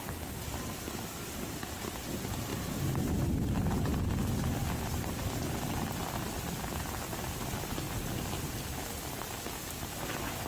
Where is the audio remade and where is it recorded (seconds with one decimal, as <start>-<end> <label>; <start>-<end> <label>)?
0.0-2.5 recorded; 2.5-4.0 remade; 4.0-10.5 recorded